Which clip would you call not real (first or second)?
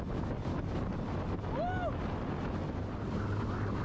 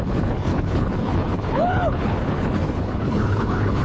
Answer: second